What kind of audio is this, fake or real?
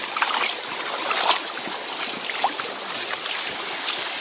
real